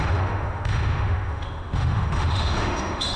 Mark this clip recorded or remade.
remade